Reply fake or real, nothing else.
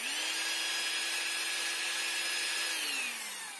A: real